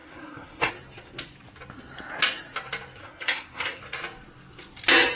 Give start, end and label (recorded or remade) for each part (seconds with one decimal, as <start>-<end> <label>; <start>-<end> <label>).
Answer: 0.0-0.7 remade; 0.7-3.0 recorded; 3.0-3.8 remade; 3.8-5.2 recorded